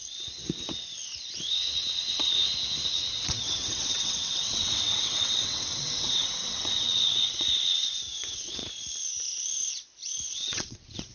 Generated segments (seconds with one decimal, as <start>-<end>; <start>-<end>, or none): 0.0-0.4; 3.1-8.6; 10.3-11.1